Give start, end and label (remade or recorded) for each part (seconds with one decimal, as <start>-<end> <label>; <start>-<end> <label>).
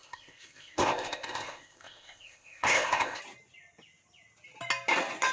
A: 0.0-3.2 remade; 3.2-5.3 recorded